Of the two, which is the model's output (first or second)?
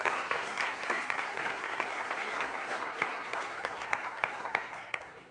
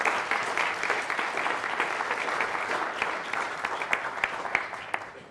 first